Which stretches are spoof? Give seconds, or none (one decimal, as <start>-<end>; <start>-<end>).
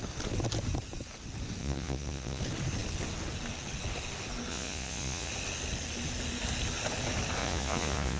1.6-2.4; 4.5-5.3; 7.4-8.2